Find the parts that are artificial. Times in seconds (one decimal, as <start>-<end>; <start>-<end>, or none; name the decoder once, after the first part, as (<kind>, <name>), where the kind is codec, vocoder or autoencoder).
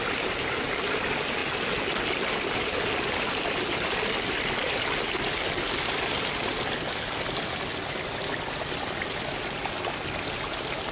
none